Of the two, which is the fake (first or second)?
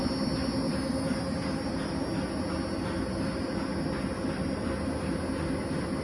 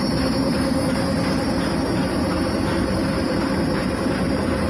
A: second